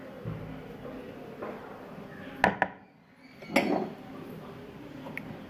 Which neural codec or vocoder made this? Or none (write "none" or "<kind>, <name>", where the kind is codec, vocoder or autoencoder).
none